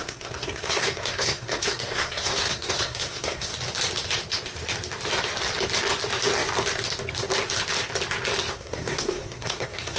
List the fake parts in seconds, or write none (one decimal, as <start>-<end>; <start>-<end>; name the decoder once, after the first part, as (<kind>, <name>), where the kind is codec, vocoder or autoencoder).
0.0-3.5 (codec, SNAC); 8.5-10.0